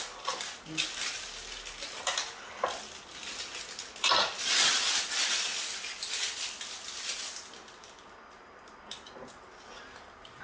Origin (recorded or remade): recorded